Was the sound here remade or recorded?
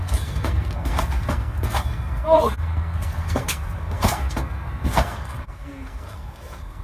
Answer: remade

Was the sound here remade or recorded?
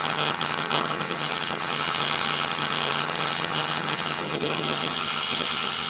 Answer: remade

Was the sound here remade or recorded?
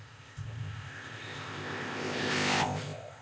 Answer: remade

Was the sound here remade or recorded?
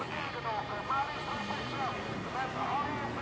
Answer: recorded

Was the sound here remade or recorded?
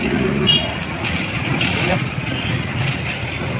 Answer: remade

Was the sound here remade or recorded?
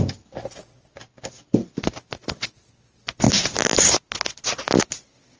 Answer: recorded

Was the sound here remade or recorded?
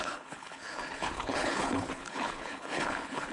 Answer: remade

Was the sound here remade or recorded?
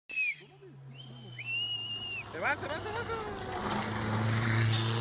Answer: recorded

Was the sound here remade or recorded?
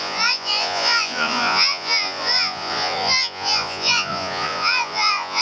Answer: remade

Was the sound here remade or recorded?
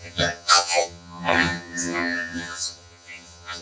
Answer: remade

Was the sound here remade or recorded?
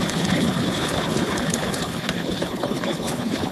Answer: remade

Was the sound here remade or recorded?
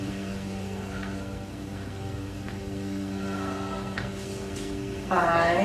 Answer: remade